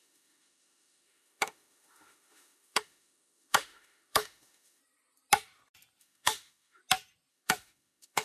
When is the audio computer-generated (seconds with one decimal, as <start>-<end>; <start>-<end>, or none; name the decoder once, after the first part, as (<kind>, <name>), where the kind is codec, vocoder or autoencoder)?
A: 0.0-4.8 (autoencoder, DAC-VAE); 6.0-6.8; 7.3-8.2